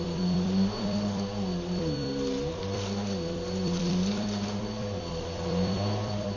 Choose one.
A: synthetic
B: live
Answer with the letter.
A